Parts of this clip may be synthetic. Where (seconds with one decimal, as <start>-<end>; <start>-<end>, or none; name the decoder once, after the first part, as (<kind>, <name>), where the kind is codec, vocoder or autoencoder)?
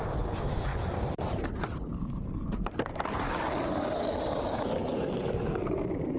0.0-6.2 (vocoder, BigVGAN v2)